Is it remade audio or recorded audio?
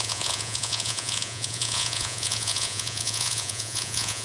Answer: remade